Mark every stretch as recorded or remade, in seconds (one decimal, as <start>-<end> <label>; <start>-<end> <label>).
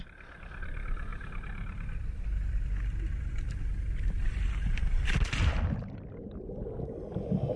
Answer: 0.0-1.1 recorded; 1.1-3.3 remade; 3.3-7.6 recorded